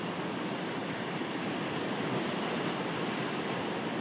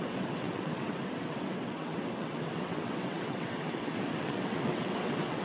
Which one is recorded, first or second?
first